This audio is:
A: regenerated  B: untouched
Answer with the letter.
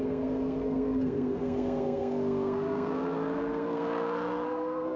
A